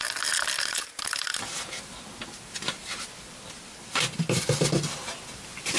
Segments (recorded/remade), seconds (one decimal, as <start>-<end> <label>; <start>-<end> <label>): 0.0-5.8 recorded